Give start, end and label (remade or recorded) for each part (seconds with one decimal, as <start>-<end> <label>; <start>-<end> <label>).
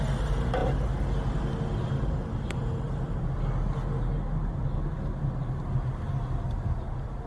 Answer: 0.0-7.3 recorded